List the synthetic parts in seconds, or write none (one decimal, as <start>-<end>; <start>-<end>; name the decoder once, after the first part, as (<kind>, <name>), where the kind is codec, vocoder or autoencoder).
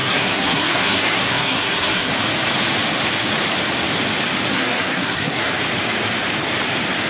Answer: 0.0-2.1 (codec, SNAC); 4.5-5.5